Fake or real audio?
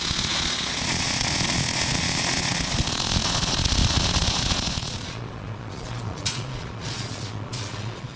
fake